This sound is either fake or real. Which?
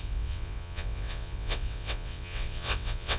fake